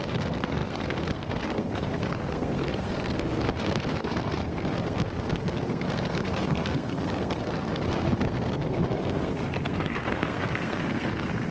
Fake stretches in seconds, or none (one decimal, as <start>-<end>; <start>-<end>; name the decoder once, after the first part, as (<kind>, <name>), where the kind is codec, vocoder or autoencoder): 0.0-11.5 (codec, SNAC)

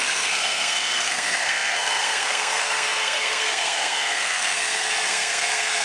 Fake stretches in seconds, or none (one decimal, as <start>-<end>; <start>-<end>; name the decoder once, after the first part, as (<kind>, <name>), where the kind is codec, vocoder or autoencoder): 0.0-5.8 (codec, SNAC)

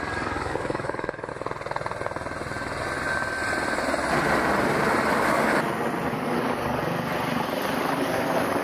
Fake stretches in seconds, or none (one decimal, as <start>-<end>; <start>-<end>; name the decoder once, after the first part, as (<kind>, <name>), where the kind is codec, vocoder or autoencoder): 0.0-1.3 (codec, DAC); 5.1-5.5; 6.1-6.8; 7.8-8.6

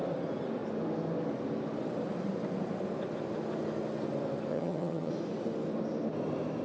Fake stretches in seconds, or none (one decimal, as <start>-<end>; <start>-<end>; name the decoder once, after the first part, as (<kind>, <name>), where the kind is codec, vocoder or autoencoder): 4.5-5.1 (vocoder, HiFi-GAN)

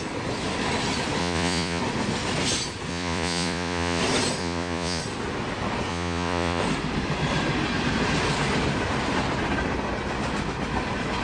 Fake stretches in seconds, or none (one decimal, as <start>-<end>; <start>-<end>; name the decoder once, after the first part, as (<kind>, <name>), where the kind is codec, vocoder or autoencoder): 1.2-1.8 (vocoder, Vocos); 2.9-4.0; 4.4-5.0; 5.9-6.6